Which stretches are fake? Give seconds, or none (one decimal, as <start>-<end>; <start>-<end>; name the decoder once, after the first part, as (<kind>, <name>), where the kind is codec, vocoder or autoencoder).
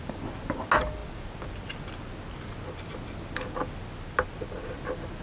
none